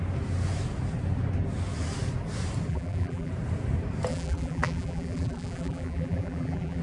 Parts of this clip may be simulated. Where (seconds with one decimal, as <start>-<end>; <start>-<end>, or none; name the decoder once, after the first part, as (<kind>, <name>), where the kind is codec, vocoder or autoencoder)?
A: 2.7-3.3 (vocoder, BigVGAN v2); 4.1-6.8